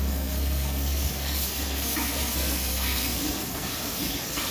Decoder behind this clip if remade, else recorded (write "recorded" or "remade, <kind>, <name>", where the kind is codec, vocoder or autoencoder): remade, codec, SNAC